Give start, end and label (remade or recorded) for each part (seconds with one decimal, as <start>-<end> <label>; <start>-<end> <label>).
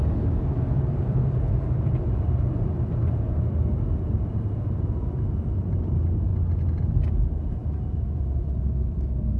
0.0-6.3 remade; 6.3-7.1 recorded; 7.1-9.4 remade